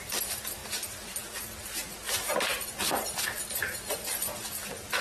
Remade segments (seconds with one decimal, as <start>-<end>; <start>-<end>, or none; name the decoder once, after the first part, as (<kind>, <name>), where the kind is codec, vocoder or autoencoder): none